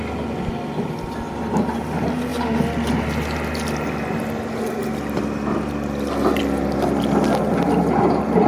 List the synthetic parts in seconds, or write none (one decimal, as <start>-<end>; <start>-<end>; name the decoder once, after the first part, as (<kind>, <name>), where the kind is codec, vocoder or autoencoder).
none